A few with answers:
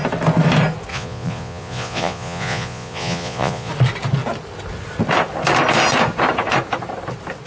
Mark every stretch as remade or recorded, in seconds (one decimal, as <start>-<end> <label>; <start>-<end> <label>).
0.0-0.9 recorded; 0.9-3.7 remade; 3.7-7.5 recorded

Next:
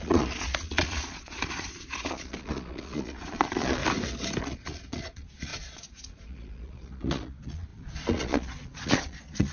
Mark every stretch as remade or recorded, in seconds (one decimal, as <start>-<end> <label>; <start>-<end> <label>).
0.0-3.8 remade; 3.8-4.4 recorded; 4.4-9.5 remade

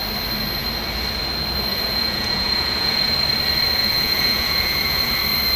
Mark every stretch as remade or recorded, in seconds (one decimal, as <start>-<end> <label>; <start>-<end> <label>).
0.0-1.7 recorded; 1.7-3.1 remade; 3.1-3.8 recorded; 3.8-5.0 remade; 5.0-5.6 recorded